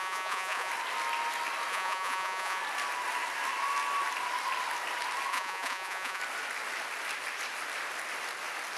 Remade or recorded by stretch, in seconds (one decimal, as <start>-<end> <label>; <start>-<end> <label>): 0.0-0.7 remade; 0.7-1.7 recorded; 1.7-2.6 remade; 2.6-5.3 recorded; 5.3-6.2 remade; 6.2-8.8 recorded